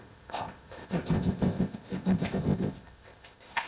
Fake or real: fake